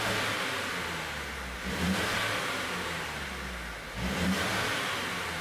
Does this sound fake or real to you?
real